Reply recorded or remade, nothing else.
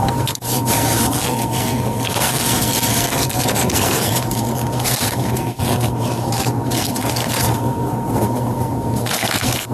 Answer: remade